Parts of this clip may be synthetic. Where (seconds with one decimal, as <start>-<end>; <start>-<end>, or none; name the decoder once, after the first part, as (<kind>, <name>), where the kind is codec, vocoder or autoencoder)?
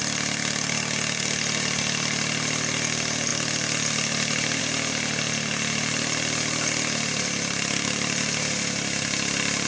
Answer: none